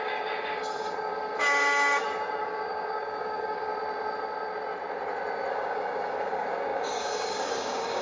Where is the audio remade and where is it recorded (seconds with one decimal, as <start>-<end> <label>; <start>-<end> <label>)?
0.0-3.7 remade; 3.7-5.5 recorded; 5.5-8.0 remade